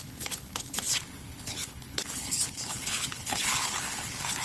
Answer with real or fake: fake